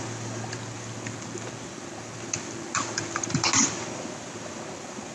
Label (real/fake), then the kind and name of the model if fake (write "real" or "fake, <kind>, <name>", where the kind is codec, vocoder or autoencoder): real